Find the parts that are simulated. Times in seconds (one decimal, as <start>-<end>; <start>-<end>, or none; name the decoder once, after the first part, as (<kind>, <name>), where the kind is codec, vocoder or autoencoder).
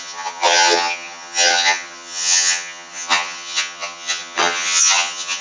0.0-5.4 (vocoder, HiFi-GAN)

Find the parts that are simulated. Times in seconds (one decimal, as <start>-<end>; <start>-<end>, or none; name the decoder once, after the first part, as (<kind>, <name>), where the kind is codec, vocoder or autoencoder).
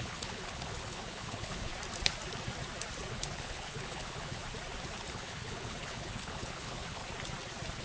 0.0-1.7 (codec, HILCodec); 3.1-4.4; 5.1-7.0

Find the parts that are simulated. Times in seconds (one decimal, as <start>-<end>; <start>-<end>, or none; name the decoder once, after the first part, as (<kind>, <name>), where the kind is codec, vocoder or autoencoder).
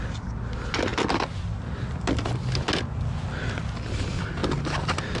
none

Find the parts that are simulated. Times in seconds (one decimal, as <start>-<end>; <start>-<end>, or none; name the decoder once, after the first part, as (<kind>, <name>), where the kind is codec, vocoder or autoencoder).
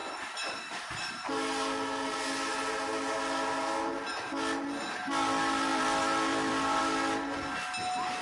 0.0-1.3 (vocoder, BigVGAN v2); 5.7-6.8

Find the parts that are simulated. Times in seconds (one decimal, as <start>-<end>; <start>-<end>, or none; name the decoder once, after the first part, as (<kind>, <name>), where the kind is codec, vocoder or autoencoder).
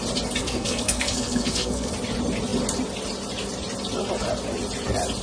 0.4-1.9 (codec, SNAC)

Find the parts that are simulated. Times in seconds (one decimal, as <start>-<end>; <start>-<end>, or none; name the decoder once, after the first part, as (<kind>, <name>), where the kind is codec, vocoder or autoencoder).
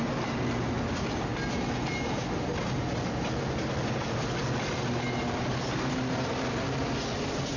none